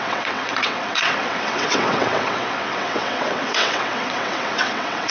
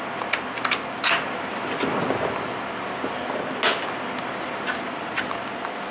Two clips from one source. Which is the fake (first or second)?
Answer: first